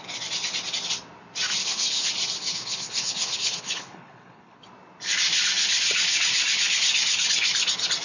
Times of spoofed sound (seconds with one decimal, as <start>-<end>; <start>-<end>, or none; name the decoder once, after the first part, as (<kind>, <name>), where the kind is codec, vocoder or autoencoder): 1.6-2.1 (codec, HILCodec); 2.5-4.6